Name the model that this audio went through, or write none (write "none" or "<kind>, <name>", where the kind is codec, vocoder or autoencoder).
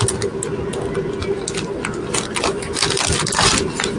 none